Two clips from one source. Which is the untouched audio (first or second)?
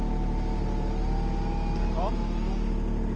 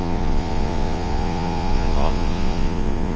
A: first